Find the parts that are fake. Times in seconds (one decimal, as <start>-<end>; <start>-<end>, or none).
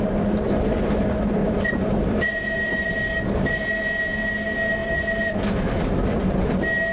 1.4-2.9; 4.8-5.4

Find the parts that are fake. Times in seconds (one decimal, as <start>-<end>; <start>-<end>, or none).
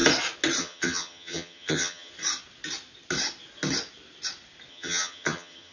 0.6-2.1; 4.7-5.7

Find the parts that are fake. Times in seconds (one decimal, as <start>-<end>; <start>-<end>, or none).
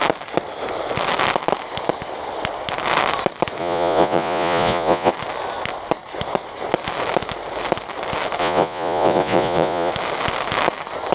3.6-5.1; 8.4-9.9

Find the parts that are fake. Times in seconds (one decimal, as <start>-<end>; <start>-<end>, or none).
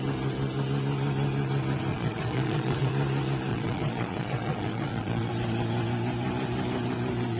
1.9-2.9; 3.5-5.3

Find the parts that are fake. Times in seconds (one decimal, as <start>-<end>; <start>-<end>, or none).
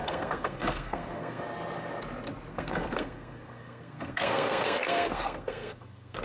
0.0-1.4; 2.5-6.2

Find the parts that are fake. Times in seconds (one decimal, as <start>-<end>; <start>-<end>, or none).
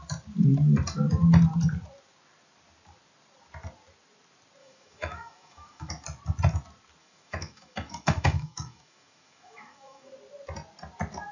4.6-5.9; 7.0-10.1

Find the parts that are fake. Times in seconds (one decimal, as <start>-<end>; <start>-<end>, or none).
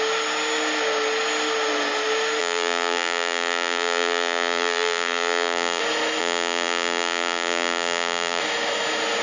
2.4-5.8; 6.2-8.4